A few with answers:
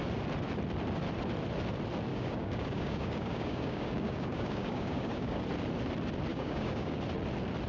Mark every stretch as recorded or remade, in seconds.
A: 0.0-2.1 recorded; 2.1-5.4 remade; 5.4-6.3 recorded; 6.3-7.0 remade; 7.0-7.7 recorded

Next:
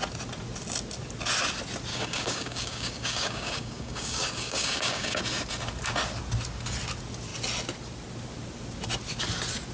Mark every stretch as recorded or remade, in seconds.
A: 0.0-1.9 recorded; 1.9-5.2 remade; 5.2-9.7 recorded

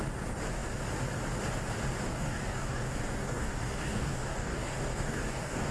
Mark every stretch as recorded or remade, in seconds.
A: 0.0-2.1 recorded; 2.1-5.7 remade